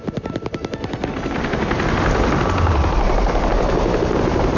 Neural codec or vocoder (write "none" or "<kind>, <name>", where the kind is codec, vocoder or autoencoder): none